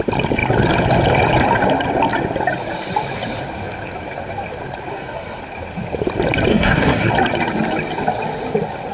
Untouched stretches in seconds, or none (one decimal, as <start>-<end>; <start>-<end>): 0.0-4.9; 5.4-6.5; 7.1-8.9